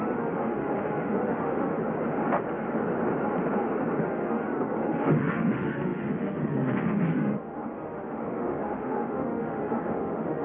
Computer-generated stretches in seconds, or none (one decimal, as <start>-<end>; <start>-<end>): 0.0-1.8; 4.0-10.4